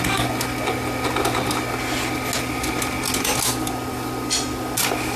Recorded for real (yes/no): yes